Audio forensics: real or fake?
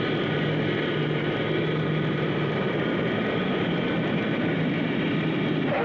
real